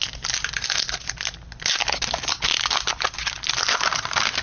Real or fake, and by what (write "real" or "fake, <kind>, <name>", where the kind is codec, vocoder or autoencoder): real